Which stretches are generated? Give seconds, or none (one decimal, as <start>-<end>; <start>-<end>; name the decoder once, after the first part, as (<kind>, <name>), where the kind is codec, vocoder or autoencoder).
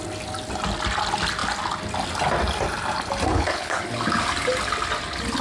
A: 3.3-3.8 (codec, HILCodec)